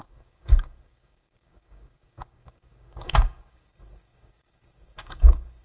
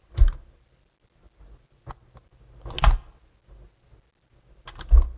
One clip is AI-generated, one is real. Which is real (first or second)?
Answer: second